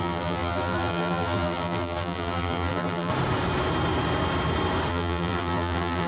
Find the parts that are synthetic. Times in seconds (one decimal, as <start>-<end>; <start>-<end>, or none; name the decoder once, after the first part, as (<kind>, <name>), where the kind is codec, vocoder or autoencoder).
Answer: 0.0-3.1 (vocoder, BigVGAN v2); 4.9-6.1

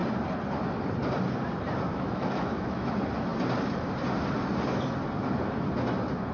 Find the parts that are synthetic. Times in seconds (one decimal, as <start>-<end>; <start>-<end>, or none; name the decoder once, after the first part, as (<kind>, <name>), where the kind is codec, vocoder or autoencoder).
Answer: 1.9-2.9 (autoencoder, DAC-VAE)

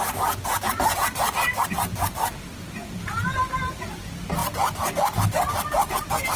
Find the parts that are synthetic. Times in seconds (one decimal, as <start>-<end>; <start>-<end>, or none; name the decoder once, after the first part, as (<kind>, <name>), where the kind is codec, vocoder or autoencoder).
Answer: none